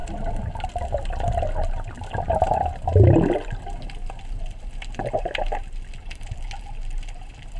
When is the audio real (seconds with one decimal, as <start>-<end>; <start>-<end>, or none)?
0.0-7.6